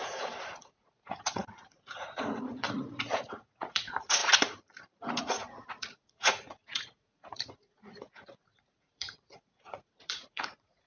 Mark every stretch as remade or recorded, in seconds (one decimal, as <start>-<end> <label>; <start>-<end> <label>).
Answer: 0.0-4.2 remade; 4.2-5.2 recorded; 5.2-10.9 remade

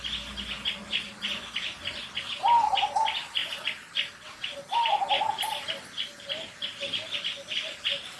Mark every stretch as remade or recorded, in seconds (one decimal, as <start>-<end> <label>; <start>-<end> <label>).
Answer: 0.0-8.2 recorded

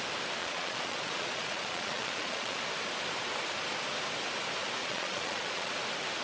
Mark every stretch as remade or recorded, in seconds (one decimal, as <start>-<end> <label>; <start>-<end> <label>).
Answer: 0.0-0.4 recorded; 0.4-2.6 remade; 2.6-4.8 recorded; 4.8-5.7 remade; 5.7-6.2 recorded

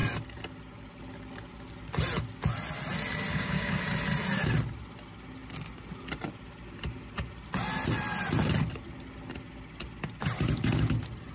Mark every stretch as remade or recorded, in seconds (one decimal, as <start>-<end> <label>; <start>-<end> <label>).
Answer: 0.0-3.3 recorded; 3.3-3.8 remade; 3.8-11.3 recorded

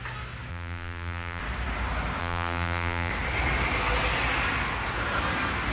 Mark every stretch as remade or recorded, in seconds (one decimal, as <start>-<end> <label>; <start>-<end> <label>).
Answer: 0.0-0.5 recorded; 0.5-1.4 remade; 1.4-2.2 recorded; 2.2-3.1 remade; 3.1-5.7 recorded